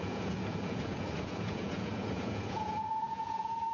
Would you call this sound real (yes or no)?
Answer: no